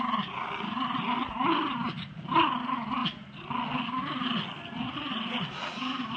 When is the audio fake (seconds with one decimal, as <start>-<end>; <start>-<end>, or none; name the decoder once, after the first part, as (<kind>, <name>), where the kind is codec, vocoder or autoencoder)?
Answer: none